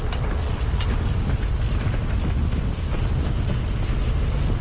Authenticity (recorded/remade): recorded